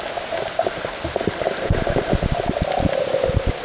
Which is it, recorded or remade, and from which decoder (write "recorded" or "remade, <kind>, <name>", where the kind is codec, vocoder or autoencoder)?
recorded